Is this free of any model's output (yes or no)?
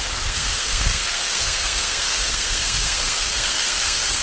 no